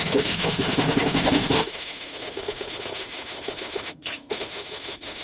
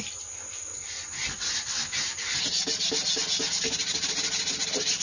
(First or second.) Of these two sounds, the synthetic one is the first